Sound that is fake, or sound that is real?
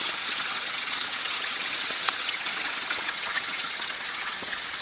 fake